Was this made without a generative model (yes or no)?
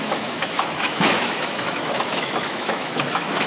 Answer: no